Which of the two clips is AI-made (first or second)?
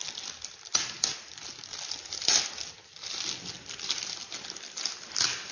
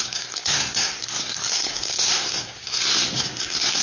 second